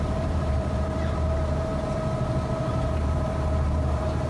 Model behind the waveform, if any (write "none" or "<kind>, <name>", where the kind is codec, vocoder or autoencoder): vocoder, BigVGAN v2